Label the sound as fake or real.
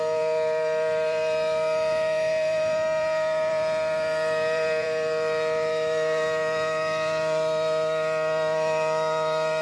fake